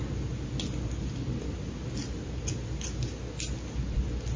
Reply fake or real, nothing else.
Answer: real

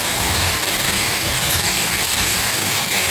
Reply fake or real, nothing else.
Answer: fake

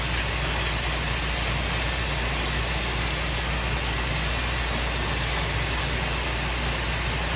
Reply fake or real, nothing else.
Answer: real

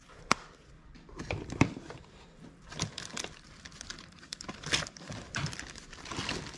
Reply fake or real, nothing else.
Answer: fake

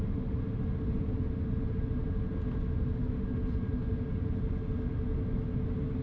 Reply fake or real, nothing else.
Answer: real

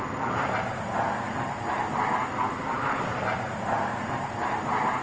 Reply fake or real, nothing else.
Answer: real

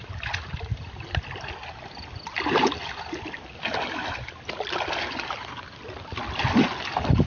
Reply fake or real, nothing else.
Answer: real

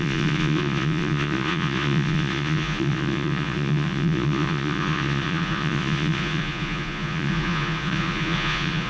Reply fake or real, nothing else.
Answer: fake